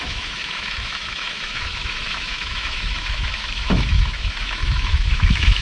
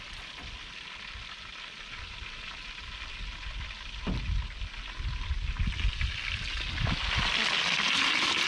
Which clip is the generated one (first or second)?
first